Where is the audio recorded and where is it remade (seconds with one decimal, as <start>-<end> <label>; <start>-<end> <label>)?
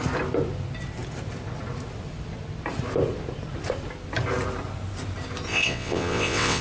0.0-5.5 recorded; 5.5-6.6 remade